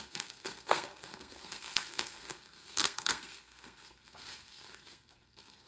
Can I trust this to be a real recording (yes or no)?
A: no